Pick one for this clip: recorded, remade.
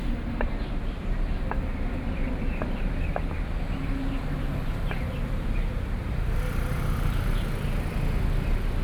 recorded